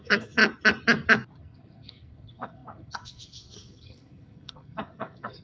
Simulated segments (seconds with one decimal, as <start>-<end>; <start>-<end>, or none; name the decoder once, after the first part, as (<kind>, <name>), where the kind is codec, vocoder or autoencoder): 0.0-0.4 (codec, SNAC); 1.4-5.4